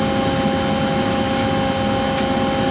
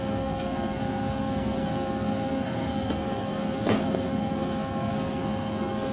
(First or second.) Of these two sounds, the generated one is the second